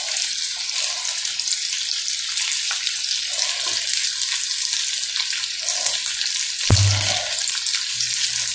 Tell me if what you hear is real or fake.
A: real